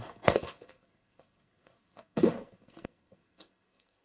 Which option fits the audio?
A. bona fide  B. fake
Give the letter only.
B